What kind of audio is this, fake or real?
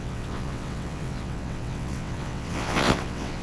fake